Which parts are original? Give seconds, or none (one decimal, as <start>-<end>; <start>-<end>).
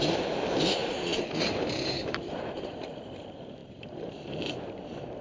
none